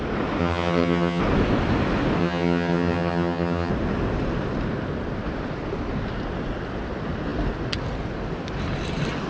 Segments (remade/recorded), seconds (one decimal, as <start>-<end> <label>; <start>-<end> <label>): 0.0-0.4 recorded; 0.4-1.2 remade; 1.2-2.2 recorded; 2.2-3.7 remade; 3.7-9.3 recorded